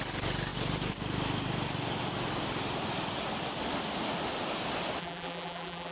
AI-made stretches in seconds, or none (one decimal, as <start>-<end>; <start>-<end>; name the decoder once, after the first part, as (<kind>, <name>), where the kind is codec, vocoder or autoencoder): 5.0-5.9 (vocoder, BigVGAN v2)